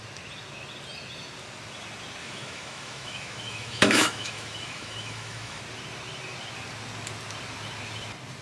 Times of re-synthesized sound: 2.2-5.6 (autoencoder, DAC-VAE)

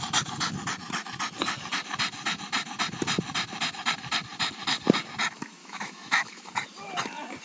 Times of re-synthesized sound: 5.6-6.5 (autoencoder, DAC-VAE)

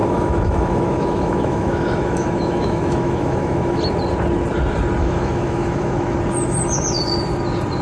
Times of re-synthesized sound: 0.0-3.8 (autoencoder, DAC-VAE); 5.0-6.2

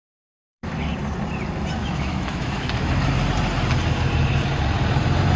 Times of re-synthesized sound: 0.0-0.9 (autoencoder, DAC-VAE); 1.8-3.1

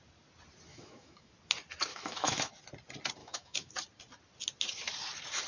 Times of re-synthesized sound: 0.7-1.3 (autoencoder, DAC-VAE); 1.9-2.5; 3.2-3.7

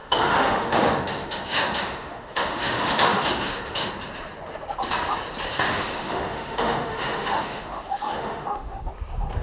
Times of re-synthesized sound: 0.0-3.9 (autoencoder, DAC-VAE); 5.5-8.9